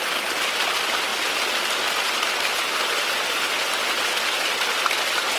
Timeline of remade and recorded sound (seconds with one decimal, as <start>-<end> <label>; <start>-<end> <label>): 0.0-5.4 recorded